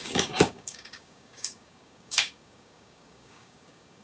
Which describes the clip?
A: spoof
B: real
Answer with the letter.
A